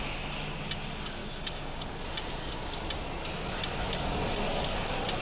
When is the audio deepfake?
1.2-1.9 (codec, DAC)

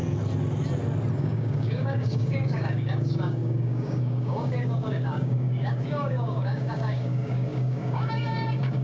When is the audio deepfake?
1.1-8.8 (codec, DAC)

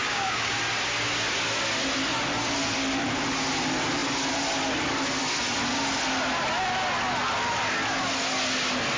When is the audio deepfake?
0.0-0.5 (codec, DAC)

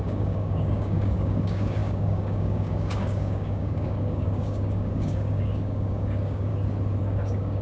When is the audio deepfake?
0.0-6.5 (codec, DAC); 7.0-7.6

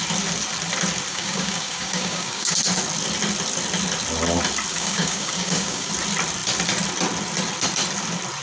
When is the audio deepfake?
1.1-2.6 (codec, DAC); 4.7-5.9

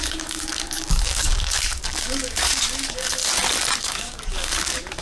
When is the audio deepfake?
0.0-3.2 (codec, DAC); 3.8-5.0

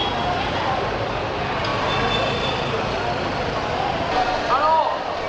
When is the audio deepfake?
none

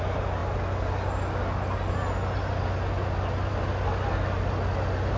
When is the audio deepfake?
none